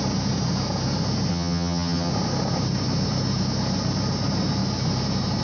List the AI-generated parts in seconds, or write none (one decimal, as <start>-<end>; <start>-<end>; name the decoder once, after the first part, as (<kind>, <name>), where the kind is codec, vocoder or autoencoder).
1.3-2.1 (vocoder, HiFi-GAN)